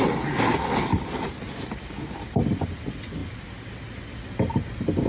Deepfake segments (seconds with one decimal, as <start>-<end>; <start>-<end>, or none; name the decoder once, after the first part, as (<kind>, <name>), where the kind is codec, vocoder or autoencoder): none